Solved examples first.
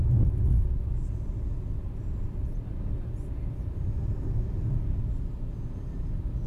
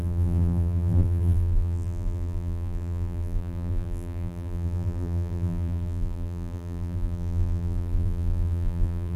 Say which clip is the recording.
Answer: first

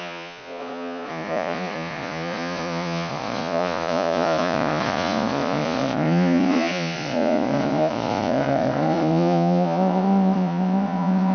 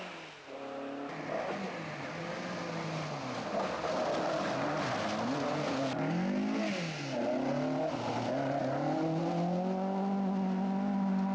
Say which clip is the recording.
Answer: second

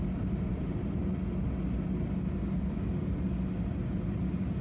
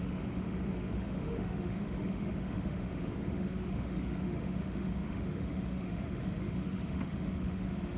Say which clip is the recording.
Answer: first